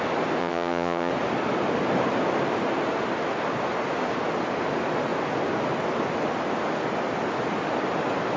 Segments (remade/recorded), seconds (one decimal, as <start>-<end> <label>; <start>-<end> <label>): 0.0-0.4 recorded; 0.4-1.1 remade; 1.1-8.4 recorded